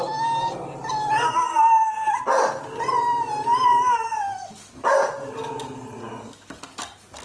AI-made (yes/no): no